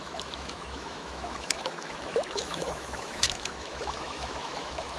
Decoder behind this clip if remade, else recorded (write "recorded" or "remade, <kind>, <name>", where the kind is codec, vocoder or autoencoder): remade, autoencoder, DAC-VAE